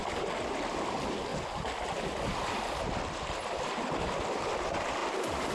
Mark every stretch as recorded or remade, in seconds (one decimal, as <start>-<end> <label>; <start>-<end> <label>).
0.0-5.5 recorded